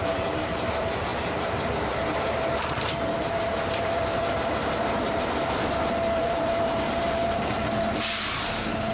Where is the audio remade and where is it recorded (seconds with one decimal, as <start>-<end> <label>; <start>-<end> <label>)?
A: 0.0-8.9 remade